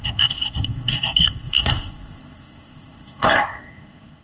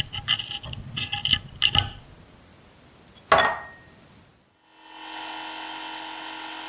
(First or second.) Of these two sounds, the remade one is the first